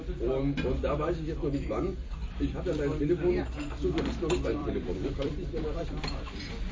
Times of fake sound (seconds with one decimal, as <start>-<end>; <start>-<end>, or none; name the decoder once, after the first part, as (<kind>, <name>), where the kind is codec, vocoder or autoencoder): 4.6-6.7 (vocoder, BigVGAN v2)